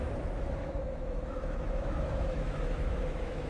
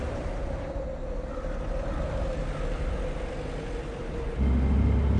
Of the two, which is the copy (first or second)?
first